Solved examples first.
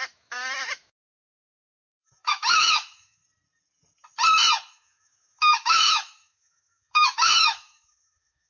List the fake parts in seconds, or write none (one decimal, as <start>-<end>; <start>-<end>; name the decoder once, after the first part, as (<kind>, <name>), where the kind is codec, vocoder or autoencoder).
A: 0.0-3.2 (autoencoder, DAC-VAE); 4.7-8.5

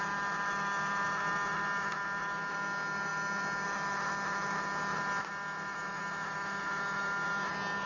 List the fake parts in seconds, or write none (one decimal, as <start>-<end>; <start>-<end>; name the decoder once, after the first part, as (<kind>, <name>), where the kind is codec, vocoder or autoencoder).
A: none

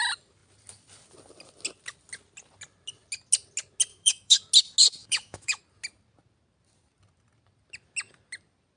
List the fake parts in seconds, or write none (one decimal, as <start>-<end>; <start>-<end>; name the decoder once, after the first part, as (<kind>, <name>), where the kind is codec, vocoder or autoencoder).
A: 3.9-4.4 (autoencoder, DAC-VAE); 5.0-5.6

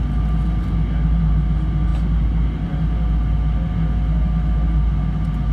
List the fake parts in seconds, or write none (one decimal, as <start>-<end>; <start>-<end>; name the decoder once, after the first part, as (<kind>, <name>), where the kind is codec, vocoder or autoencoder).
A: none

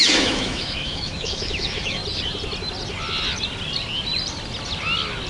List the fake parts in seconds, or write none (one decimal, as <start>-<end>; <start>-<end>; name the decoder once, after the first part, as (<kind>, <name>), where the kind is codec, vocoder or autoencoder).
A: 0.0-2.0 (autoencoder, DAC-VAE)

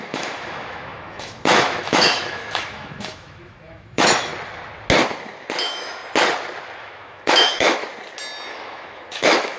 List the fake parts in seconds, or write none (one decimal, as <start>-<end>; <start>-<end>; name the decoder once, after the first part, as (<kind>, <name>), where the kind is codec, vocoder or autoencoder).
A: 0.0-4.3 (autoencoder, DAC-VAE); 5.6-6.0; 6.8-7.8; 8.5-9.6

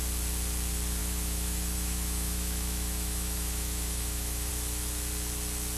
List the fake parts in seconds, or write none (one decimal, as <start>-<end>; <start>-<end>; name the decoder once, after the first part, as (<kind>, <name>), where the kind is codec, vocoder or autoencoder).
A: 1.0-4.5 (autoencoder, DAC-VAE)